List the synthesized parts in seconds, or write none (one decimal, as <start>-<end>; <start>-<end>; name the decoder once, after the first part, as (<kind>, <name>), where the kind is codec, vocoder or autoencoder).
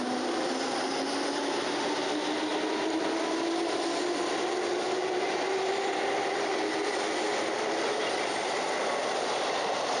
none